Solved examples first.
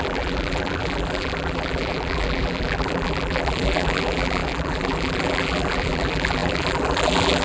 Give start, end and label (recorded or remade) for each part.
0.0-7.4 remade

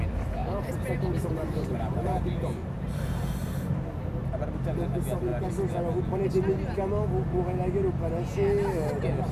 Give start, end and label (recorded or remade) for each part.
0.0-0.4 recorded; 0.4-4.0 remade; 4.0-9.3 recorded

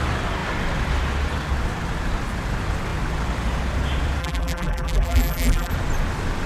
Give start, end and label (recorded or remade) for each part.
0.0-4.2 recorded; 4.2-5.7 remade; 5.7-6.5 recorded

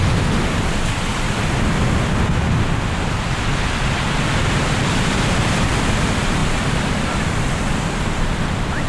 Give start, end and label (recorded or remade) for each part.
0.0-1.1 remade; 1.1-3.9 recorded; 3.9-6.4 remade; 6.4-7.6 recorded; 7.6-8.9 remade

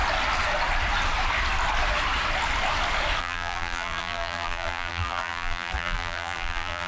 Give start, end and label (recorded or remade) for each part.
0.0-3.2 recorded; 3.2-6.9 remade

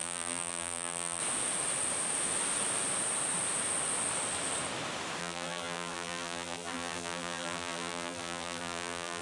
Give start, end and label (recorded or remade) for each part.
0.0-1.2 remade; 1.2-5.2 recorded; 5.2-9.2 remade

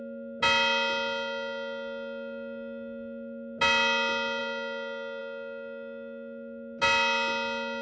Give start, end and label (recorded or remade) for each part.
0.0-7.8 recorded